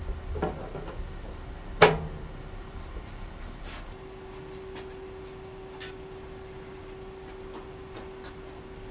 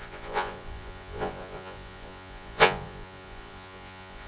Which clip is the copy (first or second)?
second